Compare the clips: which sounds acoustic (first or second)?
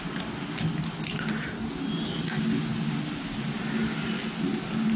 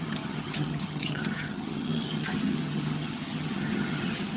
first